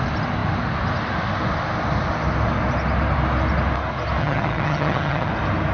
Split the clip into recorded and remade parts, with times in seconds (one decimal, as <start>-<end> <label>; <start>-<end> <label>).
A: 0.0-4.2 recorded; 4.2-5.3 remade; 5.3-5.7 recorded